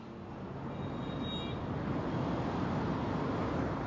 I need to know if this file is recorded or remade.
recorded